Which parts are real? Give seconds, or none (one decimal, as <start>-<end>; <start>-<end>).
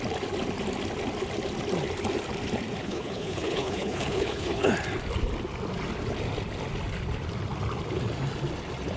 0.0-2.8; 4.7-9.0